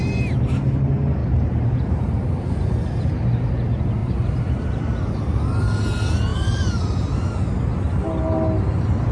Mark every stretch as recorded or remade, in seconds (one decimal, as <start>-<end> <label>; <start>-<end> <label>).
0.0-1.2 recorded; 1.2-2.3 remade; 2.3-4.0 recorded; 4.0-4.8 remade; 4.8-6.3 recorded; 6.3-7.6 remade; 7.6-9.1 recorded